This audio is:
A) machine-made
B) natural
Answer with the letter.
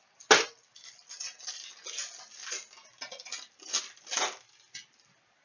B